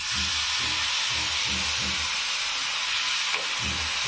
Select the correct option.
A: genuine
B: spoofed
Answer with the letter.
A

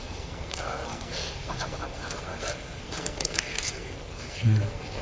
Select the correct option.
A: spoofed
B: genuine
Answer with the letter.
A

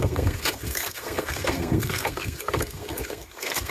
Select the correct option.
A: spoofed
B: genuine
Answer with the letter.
A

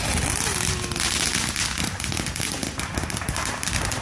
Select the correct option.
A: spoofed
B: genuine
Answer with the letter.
B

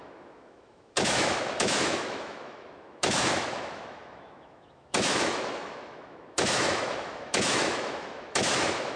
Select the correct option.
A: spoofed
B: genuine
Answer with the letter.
A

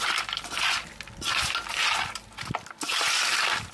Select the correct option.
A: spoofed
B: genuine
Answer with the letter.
B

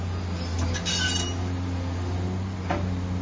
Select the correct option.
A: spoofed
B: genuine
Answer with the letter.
B